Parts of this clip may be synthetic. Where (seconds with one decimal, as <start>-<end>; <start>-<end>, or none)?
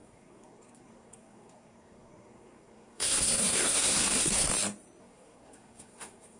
0.0-4.5; 5.0-6.4